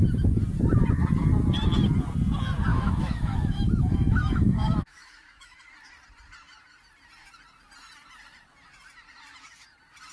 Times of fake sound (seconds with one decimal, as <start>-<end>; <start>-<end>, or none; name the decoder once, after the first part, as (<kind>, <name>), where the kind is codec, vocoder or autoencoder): 2.7-5.6 (autoencoder, DAC-VAE)